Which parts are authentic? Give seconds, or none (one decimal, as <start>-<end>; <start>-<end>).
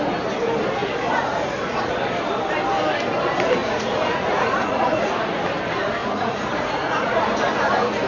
0.0-0.8; 1.9-3.6; 5.5-6.0; 7.2-8.1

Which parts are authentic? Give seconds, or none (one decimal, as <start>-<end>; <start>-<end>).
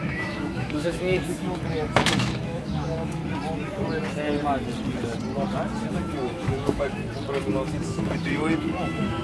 3.2-5.9; 7.0-7.5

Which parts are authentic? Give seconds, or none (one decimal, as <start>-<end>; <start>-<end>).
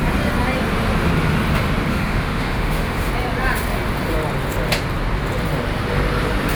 0.0-1.9; 3.1-6.6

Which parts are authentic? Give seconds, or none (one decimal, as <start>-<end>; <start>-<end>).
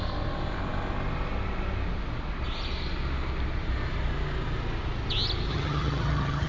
0.0-5.5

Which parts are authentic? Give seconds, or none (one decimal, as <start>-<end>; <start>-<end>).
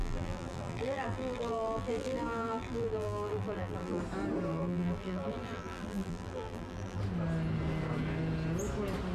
4.0-4.5; 7.0-9.1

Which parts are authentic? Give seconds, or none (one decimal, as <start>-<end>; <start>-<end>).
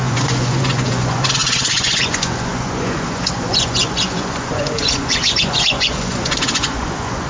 none